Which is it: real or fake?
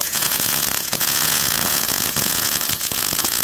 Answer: fake